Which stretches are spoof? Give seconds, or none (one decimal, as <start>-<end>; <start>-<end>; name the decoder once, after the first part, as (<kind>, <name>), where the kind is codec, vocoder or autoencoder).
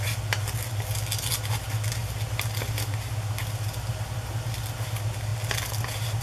none